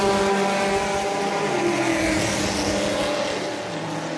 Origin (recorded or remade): recorded